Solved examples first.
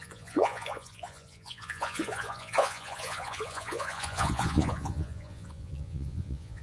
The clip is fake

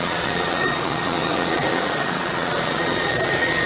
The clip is fake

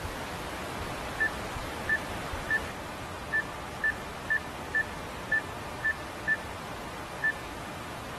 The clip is real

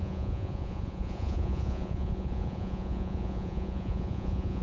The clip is fake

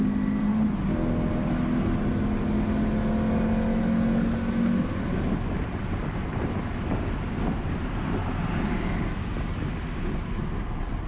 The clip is real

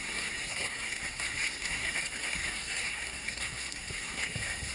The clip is fake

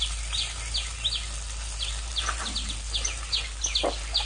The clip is real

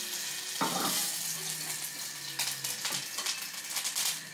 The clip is real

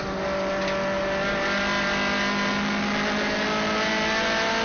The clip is real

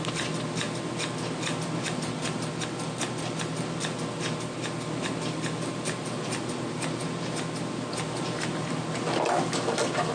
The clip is real